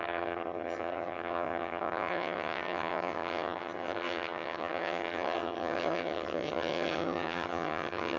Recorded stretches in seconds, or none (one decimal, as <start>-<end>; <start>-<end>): none